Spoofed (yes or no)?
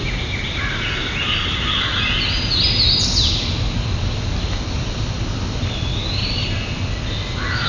no